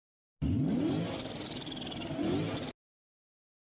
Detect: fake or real real